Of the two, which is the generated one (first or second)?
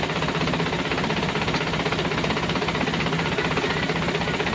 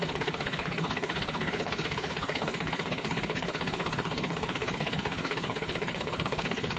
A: second